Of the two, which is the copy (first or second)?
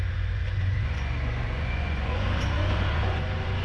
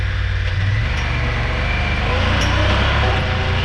first